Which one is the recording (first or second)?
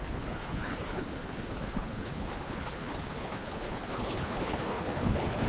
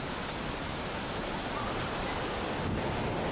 second